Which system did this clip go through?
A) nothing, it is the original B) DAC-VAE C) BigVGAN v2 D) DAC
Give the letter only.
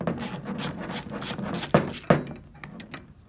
A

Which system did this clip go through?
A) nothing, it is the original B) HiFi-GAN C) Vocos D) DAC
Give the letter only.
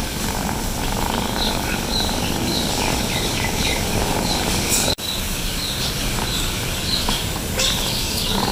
D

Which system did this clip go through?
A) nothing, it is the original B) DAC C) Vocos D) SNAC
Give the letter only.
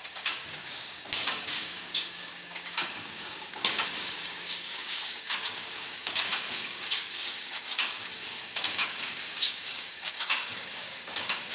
B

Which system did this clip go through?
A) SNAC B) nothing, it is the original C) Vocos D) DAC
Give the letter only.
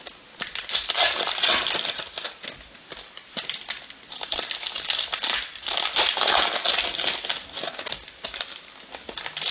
B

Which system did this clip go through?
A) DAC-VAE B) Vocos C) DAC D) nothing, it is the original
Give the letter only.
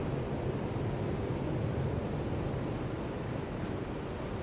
D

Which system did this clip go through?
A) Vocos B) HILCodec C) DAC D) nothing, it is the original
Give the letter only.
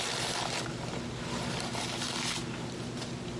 D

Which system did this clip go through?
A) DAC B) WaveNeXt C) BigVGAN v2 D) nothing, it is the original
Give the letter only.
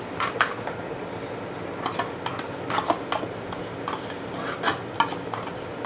D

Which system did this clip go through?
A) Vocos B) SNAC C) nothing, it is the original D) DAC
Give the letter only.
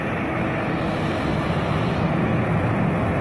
C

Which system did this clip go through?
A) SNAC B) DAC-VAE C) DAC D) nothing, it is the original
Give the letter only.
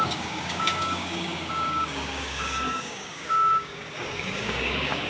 C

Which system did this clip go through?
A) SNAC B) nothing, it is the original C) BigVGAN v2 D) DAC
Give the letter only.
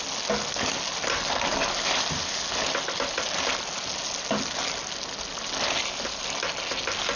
B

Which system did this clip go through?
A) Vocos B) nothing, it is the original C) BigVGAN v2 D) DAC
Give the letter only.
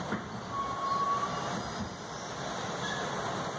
B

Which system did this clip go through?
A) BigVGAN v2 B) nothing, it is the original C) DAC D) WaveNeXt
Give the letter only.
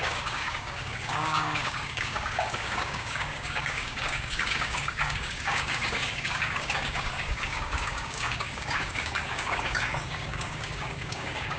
C